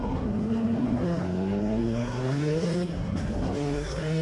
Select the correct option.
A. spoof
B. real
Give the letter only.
A